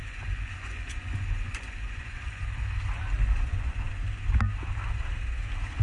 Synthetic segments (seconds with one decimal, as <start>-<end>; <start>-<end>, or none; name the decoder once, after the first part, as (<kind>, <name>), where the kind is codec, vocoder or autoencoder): 0.0-2.4 (vocoder, Vocos); 3.2-3.9